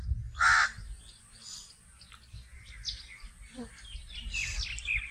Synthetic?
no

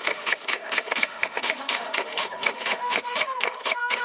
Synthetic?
yes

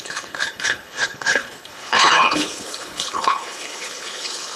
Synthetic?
yes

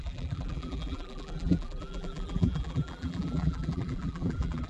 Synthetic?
yes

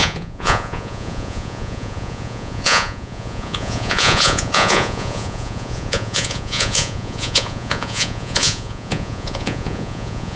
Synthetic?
yes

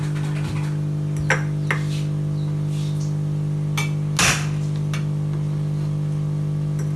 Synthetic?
no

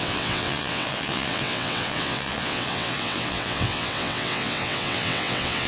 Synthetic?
yes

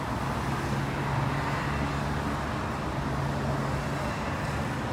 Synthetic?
no